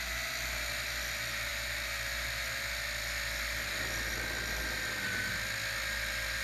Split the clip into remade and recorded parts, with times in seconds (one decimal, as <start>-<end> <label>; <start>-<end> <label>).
0.0-6.4 recorded